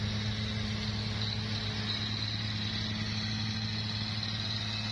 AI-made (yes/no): no